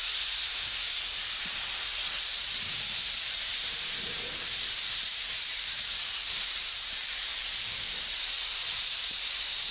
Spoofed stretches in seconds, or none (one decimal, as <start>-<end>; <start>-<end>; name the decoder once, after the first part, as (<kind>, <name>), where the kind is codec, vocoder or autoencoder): 0.0-9.7 (vocoder, BigVGAN v2)